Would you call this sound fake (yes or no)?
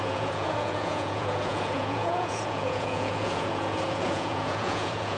yes